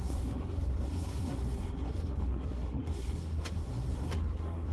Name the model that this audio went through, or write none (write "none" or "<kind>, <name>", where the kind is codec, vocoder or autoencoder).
codec, SNAC